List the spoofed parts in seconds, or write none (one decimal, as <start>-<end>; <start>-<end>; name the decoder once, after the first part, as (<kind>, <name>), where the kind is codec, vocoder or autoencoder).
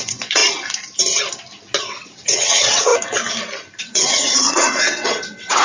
0.0-0.4 (vocoder, WaveNeXt); 1.8-2.9; 3.8-5.6